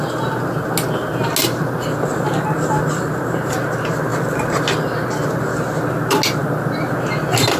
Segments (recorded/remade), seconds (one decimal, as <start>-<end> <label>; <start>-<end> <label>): 0.0-7.6 recorded